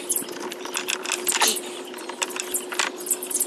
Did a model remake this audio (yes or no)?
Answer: no